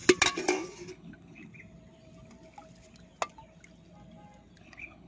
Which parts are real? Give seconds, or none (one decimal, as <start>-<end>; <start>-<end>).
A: 0.0-0.9; 1.5-4.6